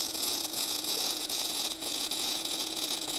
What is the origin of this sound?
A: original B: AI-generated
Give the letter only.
B